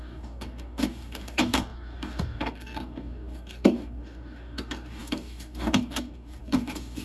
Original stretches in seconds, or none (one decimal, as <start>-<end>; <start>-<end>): none